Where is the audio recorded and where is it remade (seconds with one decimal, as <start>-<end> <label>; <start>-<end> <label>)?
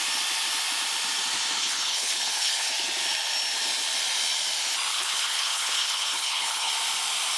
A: 0.0-1.6 recorded; 1.6-2.7 remade; 2.7-4.9 recorded; 4.9-6.7 remade; 6.7-7.4 recorded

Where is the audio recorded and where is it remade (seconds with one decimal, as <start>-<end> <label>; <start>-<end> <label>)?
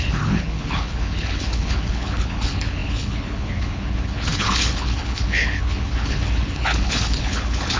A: 0.0-7.8 remade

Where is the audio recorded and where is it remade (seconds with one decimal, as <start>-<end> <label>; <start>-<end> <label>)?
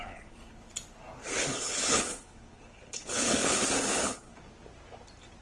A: 0.0-0.7 remade; 0.7-1.2 recorded; 1.2-4.4 remade; 4.4-5.4 recorded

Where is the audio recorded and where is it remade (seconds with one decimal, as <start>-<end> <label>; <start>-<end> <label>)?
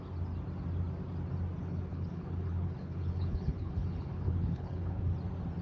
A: 0.0-1.6 recorded; 1.6-5.0 remade; 5.0-5.6 recorded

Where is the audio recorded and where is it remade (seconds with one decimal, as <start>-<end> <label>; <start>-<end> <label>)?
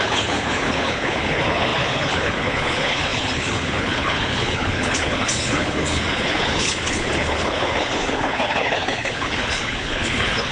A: 0.0-10.5 remade